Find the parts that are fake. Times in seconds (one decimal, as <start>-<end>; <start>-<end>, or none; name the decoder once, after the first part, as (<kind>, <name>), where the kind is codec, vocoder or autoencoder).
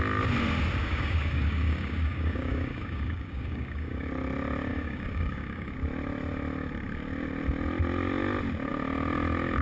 0.8-4.1 (codec, DAC); 4.7-5.7